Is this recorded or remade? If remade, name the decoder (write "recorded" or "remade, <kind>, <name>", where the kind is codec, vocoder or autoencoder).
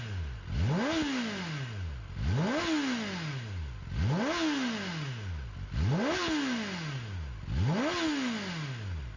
recorded